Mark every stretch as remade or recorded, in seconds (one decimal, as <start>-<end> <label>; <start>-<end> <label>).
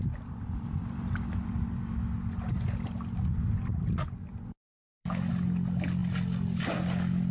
0.0-7.3 recorded